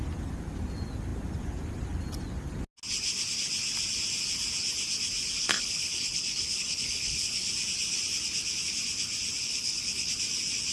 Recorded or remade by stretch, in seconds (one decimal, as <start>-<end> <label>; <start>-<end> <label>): 0.0-5.4 recorded; 5.4-7.5 remade; 7.5-9.4 recorded; 9.4-10.1 remade; 10.1-10.7 recorded